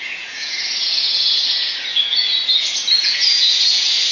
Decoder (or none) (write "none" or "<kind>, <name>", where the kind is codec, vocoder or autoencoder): vocoder, Vocos